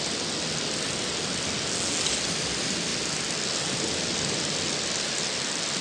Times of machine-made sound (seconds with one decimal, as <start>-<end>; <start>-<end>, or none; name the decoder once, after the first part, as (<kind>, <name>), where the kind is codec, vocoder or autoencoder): none